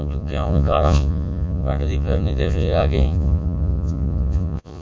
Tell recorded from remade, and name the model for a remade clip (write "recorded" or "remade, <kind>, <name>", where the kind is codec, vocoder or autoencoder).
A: remade, vocoder, Vocos